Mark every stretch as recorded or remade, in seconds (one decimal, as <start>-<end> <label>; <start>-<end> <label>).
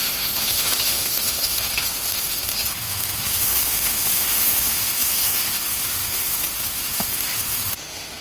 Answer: 0.0-8.2 remade